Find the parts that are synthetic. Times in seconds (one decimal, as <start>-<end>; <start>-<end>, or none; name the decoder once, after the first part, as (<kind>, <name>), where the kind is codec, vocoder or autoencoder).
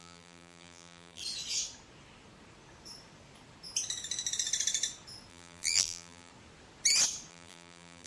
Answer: 0.0-1.2 (vocoder, BigVGAN v2); 5.3-6.3; 7.3-8.1